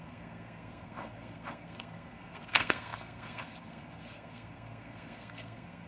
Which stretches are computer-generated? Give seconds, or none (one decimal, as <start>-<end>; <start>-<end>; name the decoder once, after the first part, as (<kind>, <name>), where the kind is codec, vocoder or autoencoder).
0.0-5.9 (codec, SNAC)